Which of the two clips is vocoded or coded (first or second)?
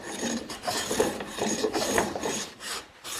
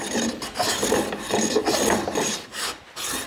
first